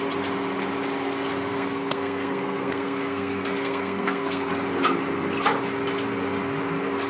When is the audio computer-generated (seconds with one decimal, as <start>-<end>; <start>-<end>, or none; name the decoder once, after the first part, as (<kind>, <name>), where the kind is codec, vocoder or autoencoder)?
1.5-4.5 (codec, SNAC)